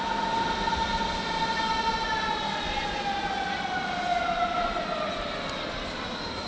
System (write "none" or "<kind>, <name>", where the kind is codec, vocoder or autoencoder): none